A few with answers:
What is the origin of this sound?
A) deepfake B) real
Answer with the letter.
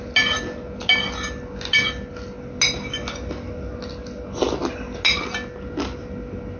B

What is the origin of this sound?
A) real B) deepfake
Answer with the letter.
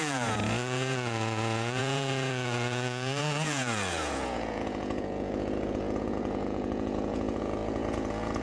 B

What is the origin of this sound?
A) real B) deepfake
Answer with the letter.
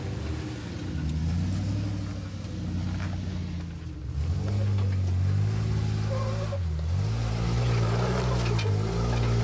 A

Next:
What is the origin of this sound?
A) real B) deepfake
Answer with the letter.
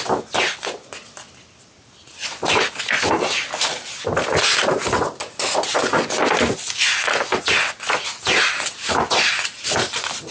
A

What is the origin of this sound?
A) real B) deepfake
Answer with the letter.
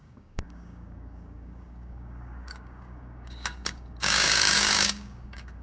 B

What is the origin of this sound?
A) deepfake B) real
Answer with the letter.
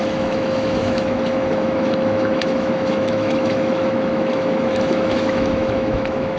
A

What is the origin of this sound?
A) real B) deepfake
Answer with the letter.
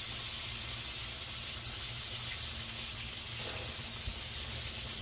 A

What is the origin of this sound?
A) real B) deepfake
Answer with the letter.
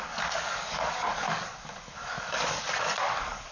B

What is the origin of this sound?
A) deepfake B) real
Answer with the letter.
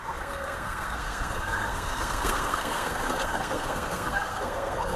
A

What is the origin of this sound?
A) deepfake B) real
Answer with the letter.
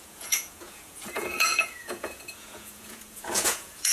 A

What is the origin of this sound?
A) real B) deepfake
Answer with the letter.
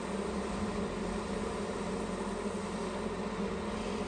A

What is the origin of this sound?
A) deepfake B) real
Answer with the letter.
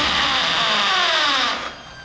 B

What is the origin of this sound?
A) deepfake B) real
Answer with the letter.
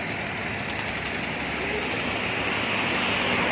B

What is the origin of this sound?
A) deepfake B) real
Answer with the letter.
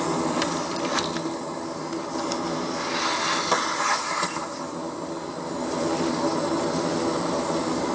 B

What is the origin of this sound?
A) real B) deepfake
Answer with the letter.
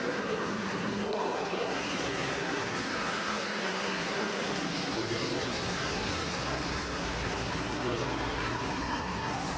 B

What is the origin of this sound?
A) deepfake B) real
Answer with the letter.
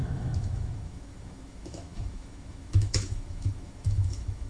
A